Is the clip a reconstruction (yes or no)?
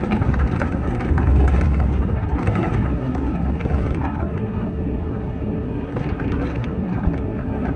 yes